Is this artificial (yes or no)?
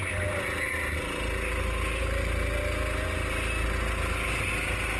no